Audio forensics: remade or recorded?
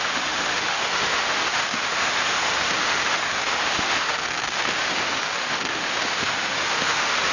remade